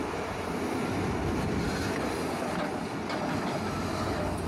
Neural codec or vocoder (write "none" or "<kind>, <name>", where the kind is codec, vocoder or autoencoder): none